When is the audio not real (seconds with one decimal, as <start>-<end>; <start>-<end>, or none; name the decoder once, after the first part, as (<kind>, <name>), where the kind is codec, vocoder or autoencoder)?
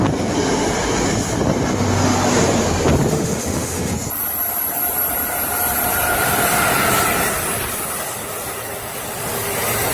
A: 3.1-3.9 (autoencoder, DAC-VAE)